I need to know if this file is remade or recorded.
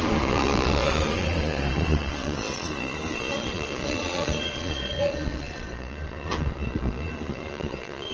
remade